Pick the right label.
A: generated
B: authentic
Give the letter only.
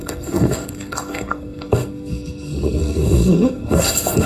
A